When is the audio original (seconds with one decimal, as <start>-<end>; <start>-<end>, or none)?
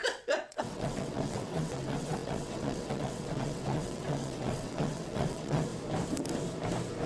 5.7-7.1